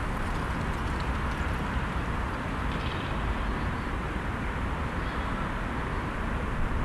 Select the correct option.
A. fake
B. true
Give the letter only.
B